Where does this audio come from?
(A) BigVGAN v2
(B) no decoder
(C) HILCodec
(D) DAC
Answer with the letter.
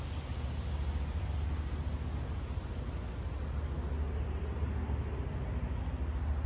B